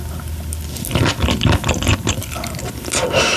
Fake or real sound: real